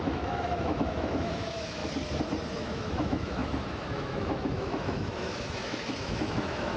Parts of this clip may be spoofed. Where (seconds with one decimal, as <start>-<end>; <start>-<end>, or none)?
0.0-1.8; 2.5-6.8